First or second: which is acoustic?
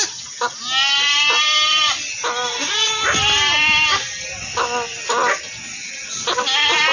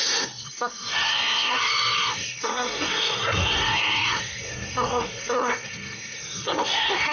first